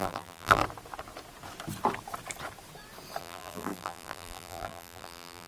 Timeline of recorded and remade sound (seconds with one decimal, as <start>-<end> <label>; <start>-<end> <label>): 0.0-0.6 remade; 0.6-3.2 recorded; 3.2-5.5 remade